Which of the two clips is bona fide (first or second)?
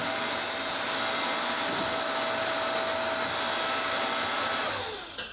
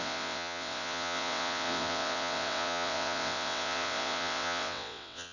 first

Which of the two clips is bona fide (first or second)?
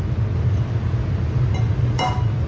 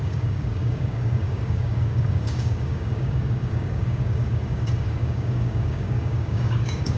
first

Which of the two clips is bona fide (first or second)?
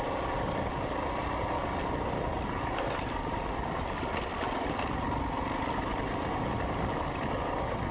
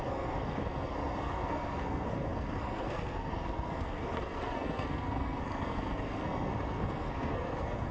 first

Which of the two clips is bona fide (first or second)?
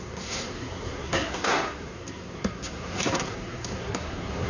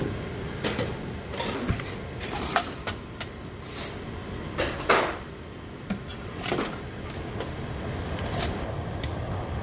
second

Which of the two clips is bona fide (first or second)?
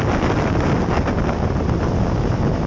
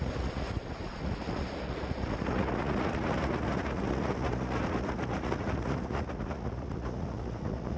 first